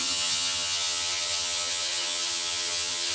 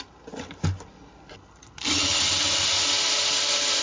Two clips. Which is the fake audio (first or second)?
first